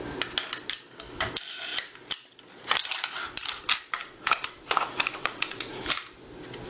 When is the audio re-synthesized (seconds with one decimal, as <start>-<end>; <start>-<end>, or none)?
4.0-5.8